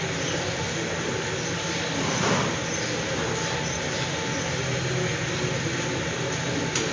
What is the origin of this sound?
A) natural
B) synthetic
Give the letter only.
A